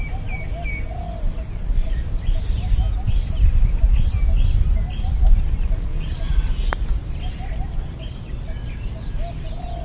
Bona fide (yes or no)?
yes